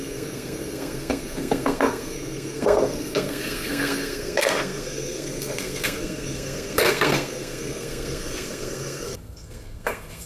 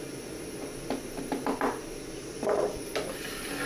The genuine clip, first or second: second